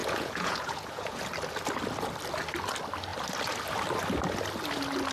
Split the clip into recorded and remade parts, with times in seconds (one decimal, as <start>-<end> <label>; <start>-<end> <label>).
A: 0.0-1.2 remade; 1.2-5.1 recorded